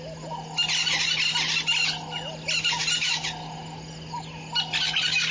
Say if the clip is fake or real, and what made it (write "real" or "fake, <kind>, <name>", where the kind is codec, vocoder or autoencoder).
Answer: real